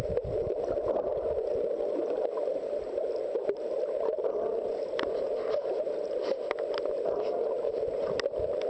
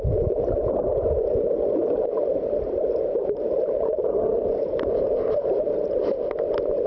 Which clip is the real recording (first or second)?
first